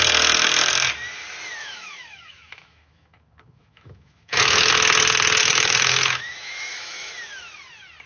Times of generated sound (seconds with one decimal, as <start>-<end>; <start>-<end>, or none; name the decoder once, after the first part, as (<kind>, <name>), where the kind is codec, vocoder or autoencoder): 1.6-4.7 (autoencoder, DAC-VAE); 5.4-7.1